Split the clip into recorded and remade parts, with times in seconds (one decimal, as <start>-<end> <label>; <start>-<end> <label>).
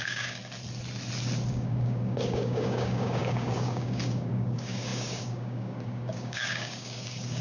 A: 0.0-0.4 remade; 0.4-1.5 recorded; 1.5-7.4 remade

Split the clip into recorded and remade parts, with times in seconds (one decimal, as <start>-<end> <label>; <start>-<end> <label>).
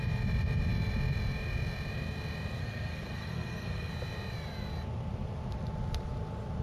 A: 0.0-2.6 recorded; 2.6-3.9 remade; 3.9-6.6 recorded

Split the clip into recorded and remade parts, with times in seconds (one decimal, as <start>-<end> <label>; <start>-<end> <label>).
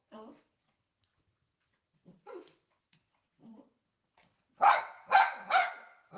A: 0.0-6.2 remade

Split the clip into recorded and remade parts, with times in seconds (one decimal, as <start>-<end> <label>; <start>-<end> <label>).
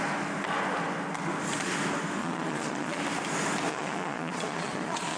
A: 0.0-2.2 recorded; 2.2-3.0 remade; 3.0-3.7 recorded; 3.7-5.2 remade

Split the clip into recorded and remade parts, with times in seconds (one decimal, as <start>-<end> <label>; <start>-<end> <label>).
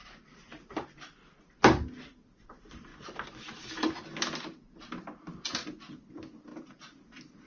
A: 0.0-0.9 remade; 0.9-6.5 recorded; 6.5-7.5 remade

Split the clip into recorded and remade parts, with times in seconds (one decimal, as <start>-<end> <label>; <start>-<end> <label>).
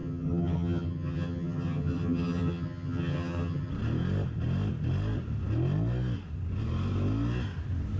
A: 0.0-3.7 remade; 3.7-8.0 recorded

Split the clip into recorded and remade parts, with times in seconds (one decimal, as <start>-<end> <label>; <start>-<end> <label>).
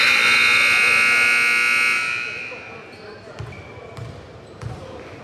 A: 0.0-5.2 recorded